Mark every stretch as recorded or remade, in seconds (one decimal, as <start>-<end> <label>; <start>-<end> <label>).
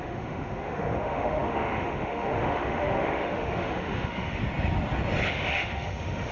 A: 0.0-4.4 remade; 4.4-5.3 recorded; 5.3-6.3 remade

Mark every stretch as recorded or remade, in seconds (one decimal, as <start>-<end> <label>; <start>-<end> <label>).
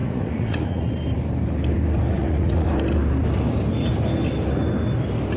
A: 0.0-0.9 remade; 0.9-2.2 recorded; 2.2-2.7 remade; 2.7-5.4 recorded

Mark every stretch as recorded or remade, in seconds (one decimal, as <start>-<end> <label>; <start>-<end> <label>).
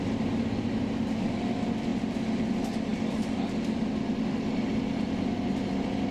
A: 0.0-6.1 recorded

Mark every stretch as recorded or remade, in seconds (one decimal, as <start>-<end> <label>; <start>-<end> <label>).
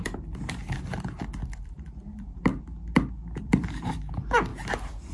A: 0.0-0.6 remade; 0.6-1.2 recorded; 1.2-2.5 remade; 2.5-3.4 recorded; 3.4-5.1 remade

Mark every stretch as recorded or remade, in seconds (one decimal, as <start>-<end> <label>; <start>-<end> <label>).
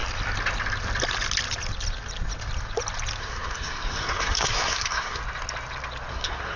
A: 0.0-3.2 recorded; 3.2-5.2 remade; 5.2-6.1 recorded; 6.1-6.6 remade